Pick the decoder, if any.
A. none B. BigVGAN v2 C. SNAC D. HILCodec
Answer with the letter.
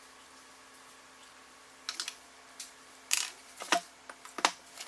A